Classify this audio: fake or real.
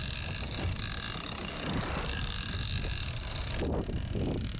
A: real